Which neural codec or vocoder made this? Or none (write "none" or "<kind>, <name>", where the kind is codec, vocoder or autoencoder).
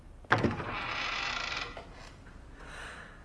none